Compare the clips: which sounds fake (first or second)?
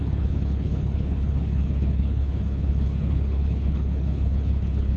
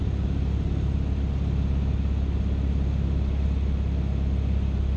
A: first